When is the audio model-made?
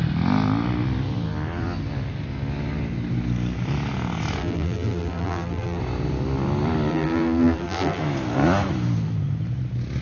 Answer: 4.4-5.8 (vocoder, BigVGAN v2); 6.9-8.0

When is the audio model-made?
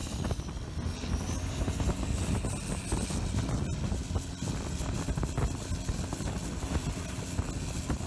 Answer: none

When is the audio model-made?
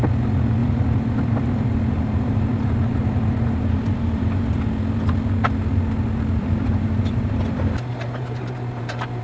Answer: 0.6-4.6 (vocoder, BigVGAN v2); 6.4-9.2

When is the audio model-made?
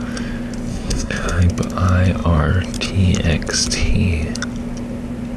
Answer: 0.7-1.4 (codec, SNAC)